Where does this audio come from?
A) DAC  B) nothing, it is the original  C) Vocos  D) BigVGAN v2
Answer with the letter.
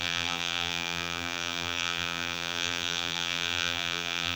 D